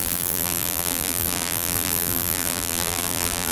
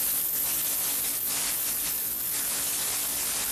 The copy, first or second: first